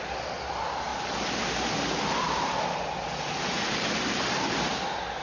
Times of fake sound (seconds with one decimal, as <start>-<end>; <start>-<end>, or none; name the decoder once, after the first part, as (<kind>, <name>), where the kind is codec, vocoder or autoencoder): none